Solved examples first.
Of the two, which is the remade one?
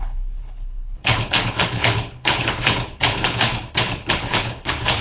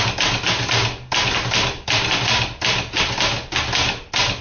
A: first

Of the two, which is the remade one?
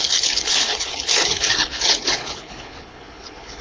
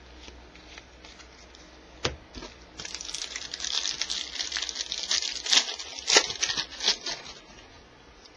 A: first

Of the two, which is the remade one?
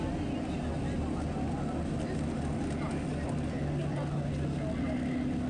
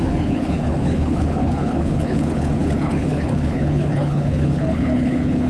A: second